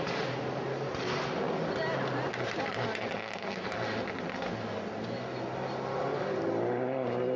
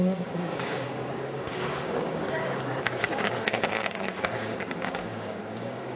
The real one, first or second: first